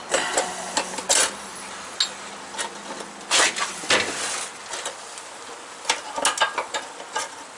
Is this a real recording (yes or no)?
yes